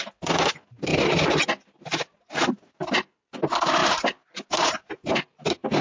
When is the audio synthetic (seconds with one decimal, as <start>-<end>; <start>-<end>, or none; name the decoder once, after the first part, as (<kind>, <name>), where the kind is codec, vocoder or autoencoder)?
none